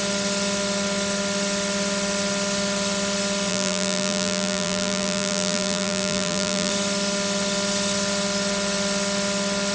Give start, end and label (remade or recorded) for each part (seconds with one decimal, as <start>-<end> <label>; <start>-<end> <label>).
0.0-3.5 recorded; 3.5-6.7 remade; 6.7-9.7 recorded